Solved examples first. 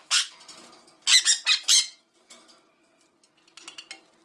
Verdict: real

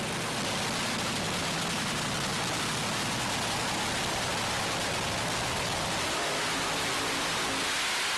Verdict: real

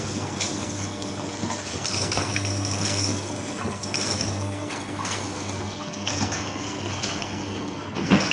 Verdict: fake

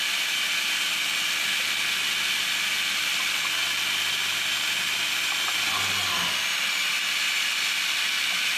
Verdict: real